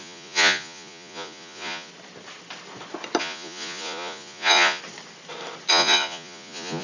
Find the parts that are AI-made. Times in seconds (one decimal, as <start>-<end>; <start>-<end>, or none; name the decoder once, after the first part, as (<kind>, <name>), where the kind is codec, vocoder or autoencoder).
0.0-1.9 (vocoder, Vocos); 3.2-4.8; 5.7-6.8